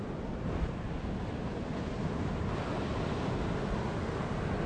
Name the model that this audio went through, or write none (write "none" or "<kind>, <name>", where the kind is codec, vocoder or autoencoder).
none